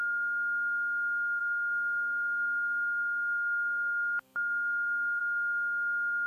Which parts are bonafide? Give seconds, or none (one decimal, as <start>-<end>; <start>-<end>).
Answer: 0.0-1.4; 5.2-6.3